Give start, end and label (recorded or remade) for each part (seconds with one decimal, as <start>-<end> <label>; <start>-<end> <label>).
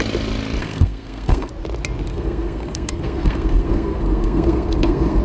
0.0-0.6 recorded; 0.6-1.5 remade; 1.5-2.1 recorded; 2.1-5.2 remade